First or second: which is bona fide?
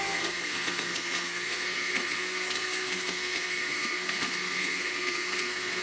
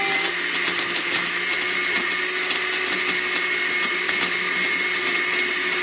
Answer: second